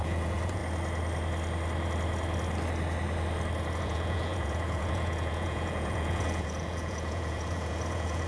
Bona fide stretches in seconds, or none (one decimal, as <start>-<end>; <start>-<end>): 0.6-3.8